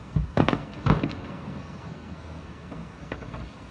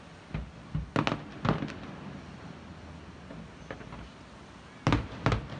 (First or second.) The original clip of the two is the second